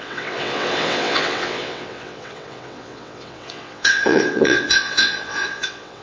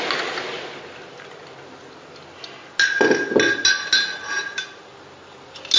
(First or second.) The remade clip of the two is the first